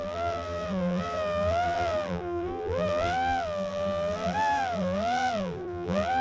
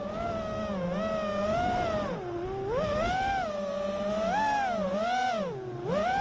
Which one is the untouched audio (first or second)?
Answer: second